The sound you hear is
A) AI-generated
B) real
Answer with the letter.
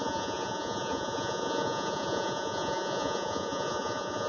A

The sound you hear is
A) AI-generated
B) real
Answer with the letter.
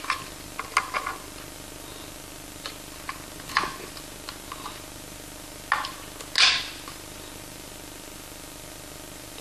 B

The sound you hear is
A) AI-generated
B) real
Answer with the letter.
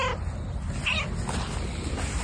B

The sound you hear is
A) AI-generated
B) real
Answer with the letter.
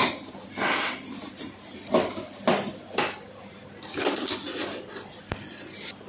B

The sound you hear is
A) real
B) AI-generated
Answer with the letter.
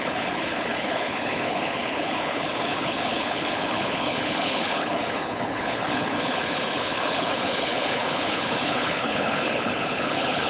B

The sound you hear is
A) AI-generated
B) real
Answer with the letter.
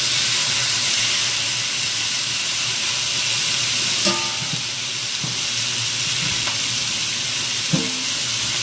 B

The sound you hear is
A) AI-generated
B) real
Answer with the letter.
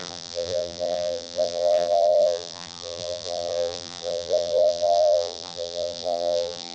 A